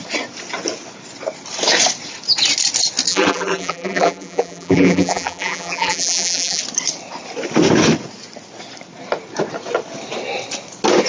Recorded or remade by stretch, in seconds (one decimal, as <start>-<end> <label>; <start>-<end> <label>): 0.0-3.1 recorded; 3.1-6.6 remade; 6.6-11.1 recorded